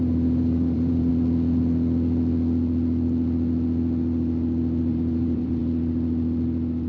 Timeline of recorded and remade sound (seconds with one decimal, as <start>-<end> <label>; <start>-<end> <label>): 0.0-1.1 remade; 1.1-4.9 recorded; 4.9-5.6 remade; 5.6-6.9 recorded